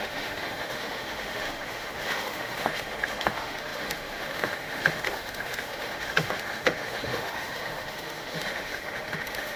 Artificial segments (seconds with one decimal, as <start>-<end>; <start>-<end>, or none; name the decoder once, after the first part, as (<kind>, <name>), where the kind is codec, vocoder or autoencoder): 0.0-9.6 (autoencoder, DAC-VAE)